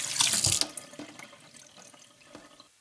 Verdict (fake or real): real